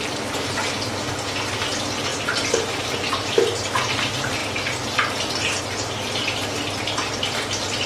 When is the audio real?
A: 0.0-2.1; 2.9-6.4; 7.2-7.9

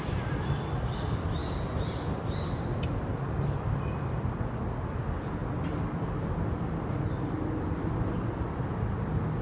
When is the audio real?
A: 0.0-9.4

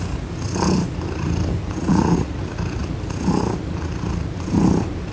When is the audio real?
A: 0.0-1.8; 2.4-5.1

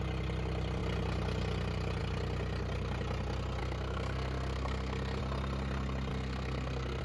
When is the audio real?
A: 0.0-3.6; 5.2-6.1

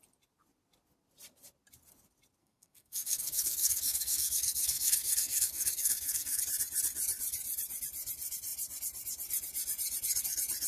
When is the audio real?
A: 0.0-2.4; 6.4-10.7

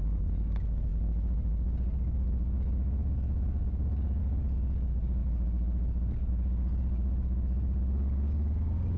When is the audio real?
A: 0.0-9.0

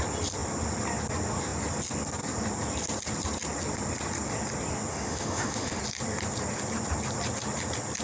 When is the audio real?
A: 0.0-4.9; 5.8-8.0